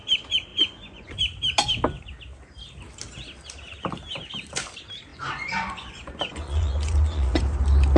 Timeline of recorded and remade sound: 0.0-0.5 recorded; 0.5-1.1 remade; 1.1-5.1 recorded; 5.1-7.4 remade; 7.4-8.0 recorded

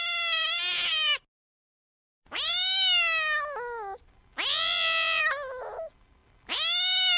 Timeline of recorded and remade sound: 0.0-4.5 recorded; 4.5-5.2 remade; 5.2-7.2 recorded

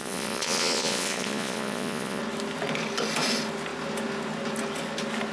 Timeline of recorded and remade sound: 0.0-2.2 remade; 2.2-5.3 recorded

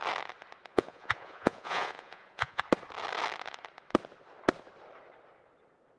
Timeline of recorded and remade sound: 0.0-0.7 recorded; 0.7-2.6 remade; 2.6-6.0 recorded

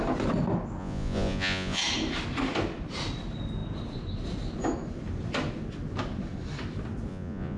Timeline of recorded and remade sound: 0.0-0.8 recorded; 0.8-1.8 remade; 1.8-7.1 recorded; 7.1-7.6 remade